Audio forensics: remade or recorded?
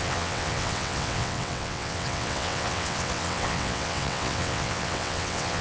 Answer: remade